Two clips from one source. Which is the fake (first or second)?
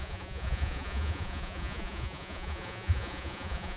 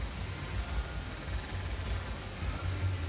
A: first